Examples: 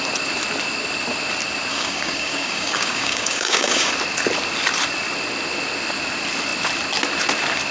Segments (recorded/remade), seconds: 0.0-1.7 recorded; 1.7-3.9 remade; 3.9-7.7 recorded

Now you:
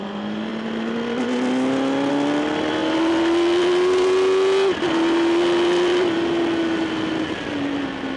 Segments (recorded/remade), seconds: 0.0-8.2 recorded

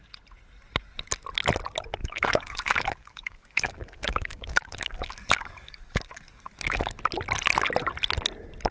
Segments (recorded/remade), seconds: 0.0-2.0 recorded; 2.0-6.9 remade; 6.9-8.7 recorded

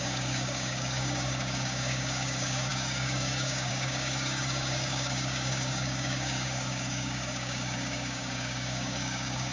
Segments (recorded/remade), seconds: 0.0-9.5 remade

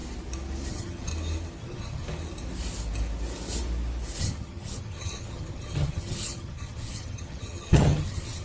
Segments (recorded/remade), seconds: 0.0-0.7 recorded; 0.7-1.1 remade; 1.1-1.6 recorded; 1.6-2.0 remade; 2.0-4.2 recorded; 4.2-8.4 remade

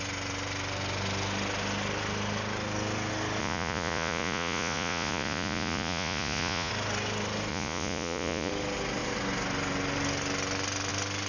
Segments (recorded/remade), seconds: 0.0-3.4 recorded; 3.4-6.7 remade; 6.7-7.5 recorded; 7.5-8.5 remade; 8.5-11.3 recorded

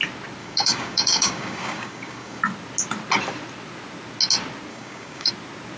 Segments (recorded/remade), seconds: 0.0-0.4 recorded; 0.4-2.4 remade; 2.4-4.7 recorded; 4.7-5.3 remade; 5.3-5.8 recorded

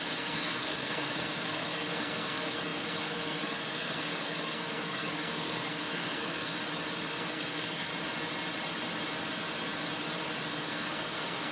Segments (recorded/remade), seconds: 0.0-6.5 remade; 6.5-7.1 recorded; 7.1-7.9 remade; 7.9-10.6 recorded; 10.6-11.5 remade